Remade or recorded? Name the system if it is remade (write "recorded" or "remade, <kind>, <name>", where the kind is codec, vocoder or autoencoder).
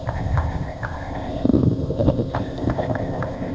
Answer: remade, codec, ZipCodec